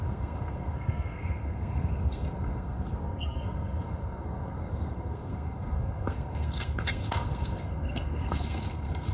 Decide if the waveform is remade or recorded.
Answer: remade